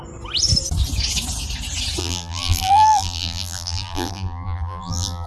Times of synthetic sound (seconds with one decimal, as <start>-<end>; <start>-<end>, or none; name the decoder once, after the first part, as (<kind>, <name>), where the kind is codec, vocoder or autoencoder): 2.0-5.3 (vocoder, BigVGAN v2)